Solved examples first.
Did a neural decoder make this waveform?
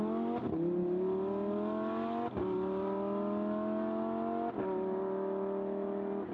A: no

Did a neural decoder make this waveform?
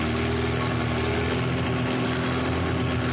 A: no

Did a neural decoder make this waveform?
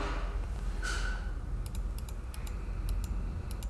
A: no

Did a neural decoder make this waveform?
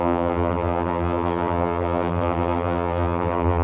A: yes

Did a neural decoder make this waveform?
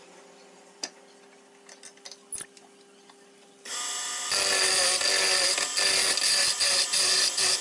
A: no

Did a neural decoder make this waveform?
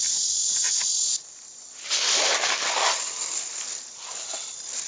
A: no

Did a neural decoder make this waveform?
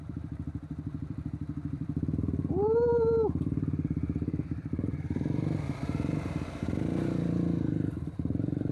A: yes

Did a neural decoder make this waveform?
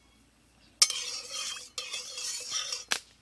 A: no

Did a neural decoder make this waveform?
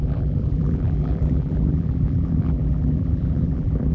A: yes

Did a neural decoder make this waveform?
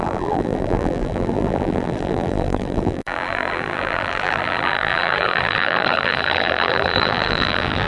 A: yes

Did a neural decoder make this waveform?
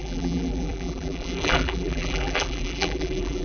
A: yes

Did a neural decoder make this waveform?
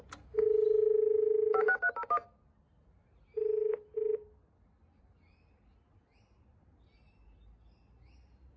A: no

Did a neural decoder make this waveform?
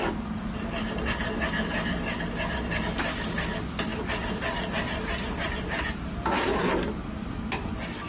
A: no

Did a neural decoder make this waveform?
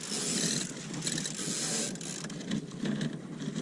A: no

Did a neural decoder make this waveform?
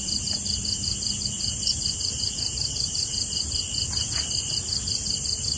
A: yes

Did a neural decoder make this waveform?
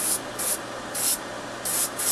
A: no